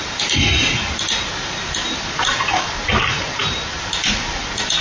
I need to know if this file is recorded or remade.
remade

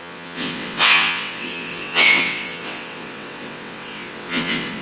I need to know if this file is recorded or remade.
remade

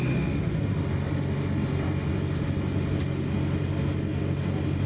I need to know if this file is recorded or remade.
recorded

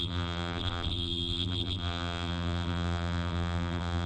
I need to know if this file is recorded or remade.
remade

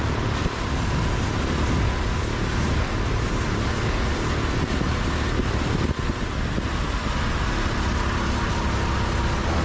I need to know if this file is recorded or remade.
recorded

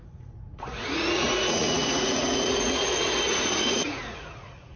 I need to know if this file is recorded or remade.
remade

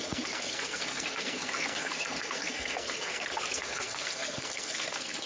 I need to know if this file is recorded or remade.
remade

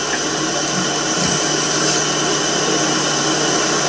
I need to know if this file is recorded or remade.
recorded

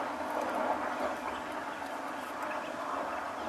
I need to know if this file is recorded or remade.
recorded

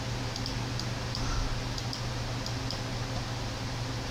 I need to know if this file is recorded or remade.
recorded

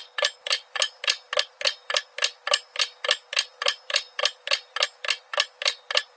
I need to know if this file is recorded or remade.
recorded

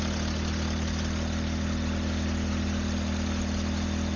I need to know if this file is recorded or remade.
recorded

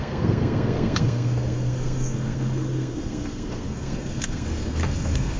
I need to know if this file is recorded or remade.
remade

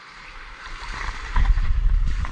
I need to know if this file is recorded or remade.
remade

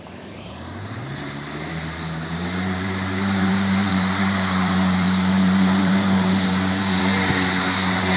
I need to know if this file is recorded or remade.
remade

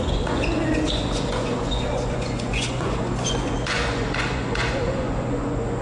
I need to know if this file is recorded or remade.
remade